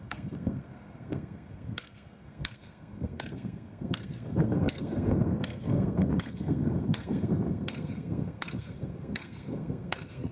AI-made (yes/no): yes